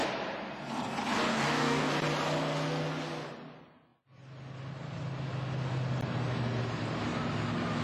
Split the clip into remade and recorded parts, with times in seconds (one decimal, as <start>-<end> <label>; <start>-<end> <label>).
0.0-1.3 recorded; 1.3-1.9 remade; 1.9-7.8 recorded